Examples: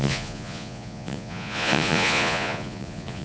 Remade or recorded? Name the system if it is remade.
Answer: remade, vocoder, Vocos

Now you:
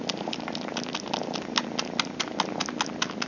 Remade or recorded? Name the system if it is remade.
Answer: recorded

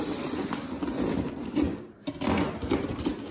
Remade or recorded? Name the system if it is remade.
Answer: recorded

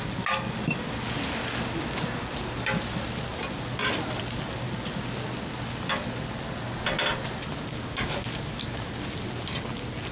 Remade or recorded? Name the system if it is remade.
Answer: recorded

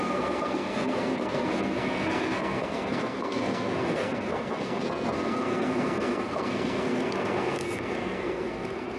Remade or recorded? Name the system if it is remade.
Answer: remade, codec, SNAC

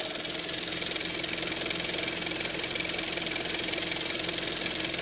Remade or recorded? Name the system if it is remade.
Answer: recorded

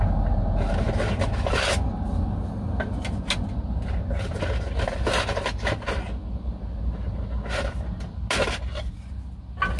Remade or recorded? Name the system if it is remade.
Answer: recorded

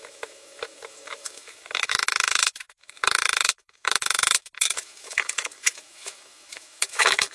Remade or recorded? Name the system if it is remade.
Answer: remade, autoencoder, DAC-VAE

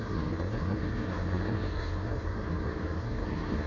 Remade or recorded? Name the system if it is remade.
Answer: remade, codec, SNAC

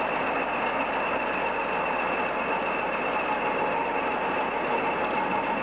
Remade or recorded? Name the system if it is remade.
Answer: recorded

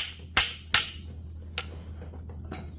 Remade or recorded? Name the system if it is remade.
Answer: recorded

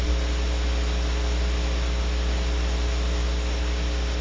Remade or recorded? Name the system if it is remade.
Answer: recorded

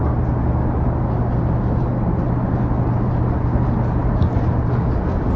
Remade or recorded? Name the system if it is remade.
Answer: recorded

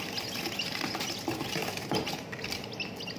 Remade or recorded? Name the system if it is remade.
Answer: recorded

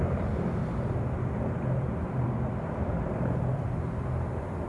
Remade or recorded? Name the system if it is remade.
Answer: remade, vocoder, BigVGAN v2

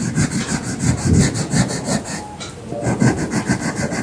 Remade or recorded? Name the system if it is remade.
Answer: recorded